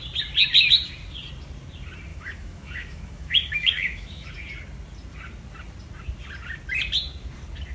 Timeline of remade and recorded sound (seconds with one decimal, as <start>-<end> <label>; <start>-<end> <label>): 0.0-2.1 recorded; 2.1-4.3 remade; 4.3-7.7 recorded